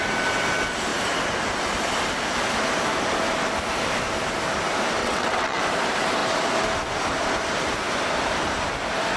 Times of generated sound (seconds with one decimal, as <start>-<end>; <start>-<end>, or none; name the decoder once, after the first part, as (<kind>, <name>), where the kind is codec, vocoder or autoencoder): 5.0-5.6 (vocoder, WaveNeXt)